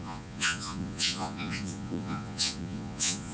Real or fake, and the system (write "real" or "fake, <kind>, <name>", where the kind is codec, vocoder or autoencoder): fake, vocoder, Vocos